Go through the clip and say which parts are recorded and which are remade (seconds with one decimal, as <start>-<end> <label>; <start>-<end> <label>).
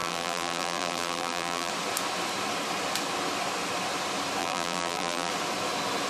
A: 0.0-1.7 remade; 1.7-4.4 recorded; 4.4-5.3 remade; 5.3-6.1 recorded